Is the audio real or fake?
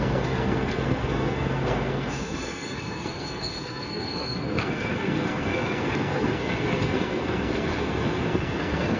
fake